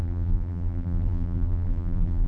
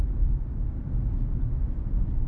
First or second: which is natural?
second